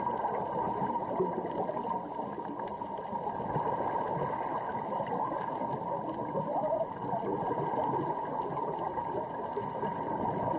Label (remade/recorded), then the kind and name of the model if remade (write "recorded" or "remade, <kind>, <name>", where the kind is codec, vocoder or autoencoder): recorded